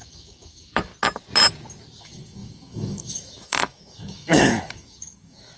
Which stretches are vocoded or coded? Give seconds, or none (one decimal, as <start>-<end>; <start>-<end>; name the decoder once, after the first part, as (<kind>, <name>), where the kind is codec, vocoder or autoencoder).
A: 0.0-0.9 (autoencoder, DAC-VAE); 2.0-5.6